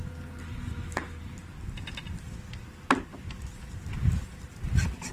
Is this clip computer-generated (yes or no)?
no